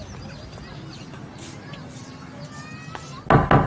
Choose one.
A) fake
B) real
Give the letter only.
B